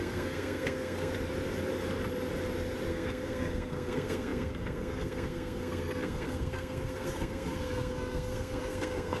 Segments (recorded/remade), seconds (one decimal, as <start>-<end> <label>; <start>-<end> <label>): 0.0-1.1 remade; 1.1-2.9 recorded; 2.9-9.2 remade